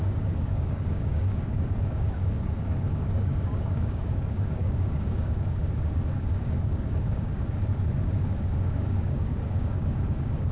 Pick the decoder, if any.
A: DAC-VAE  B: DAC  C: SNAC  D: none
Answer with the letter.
B